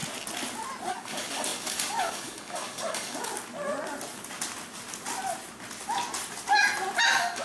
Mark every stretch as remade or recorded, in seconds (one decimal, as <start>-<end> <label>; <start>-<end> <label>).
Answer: 0.0-0.9 recorded; 0.9-3.3 remade; 3.3-7.0 recorded; 7.0-7.4 remade